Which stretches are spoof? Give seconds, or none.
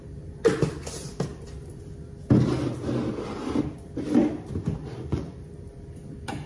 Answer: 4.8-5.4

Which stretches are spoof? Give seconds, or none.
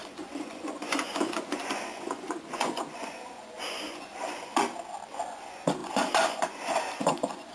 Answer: 0.0-4.6; 5.1-7.5